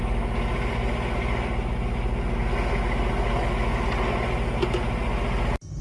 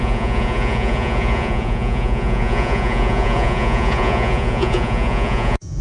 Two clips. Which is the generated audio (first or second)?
second